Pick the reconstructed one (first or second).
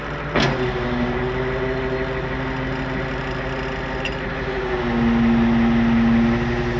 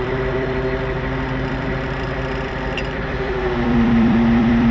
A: second